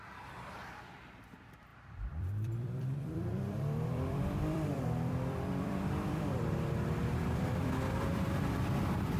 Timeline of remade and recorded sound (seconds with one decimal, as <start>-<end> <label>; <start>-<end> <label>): 0.0-9.2 remade